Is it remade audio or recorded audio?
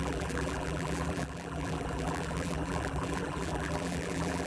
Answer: remade